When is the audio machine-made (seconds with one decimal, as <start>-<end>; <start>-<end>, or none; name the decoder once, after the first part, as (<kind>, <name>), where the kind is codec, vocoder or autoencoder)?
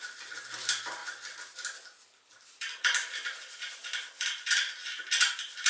0.0-1.0 (vocoder, BigVGAN v2); 2.2-4.8